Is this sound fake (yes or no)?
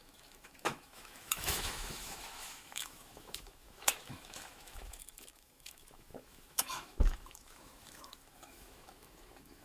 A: yes